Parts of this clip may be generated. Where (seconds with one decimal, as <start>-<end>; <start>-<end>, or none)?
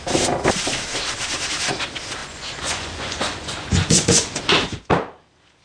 2.2-4.4